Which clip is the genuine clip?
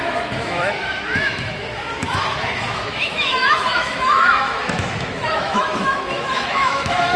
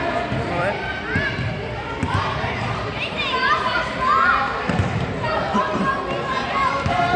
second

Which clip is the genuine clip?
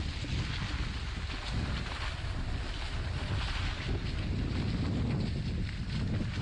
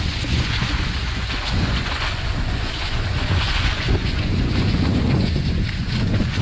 first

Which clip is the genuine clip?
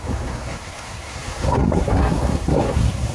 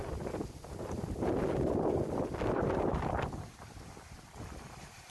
second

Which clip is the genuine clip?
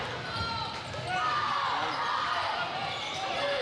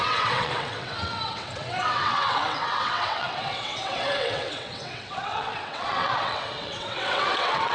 first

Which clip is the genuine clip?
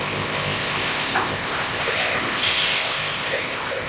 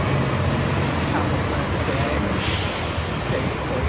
second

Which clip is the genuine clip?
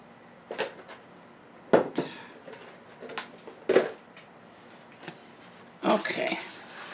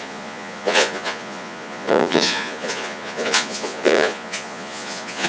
first